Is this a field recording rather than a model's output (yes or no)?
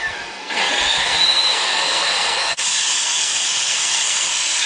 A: no